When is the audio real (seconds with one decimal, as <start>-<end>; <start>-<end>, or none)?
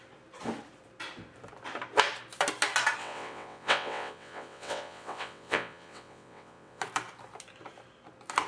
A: 0.0-3.0; 6.8-8.5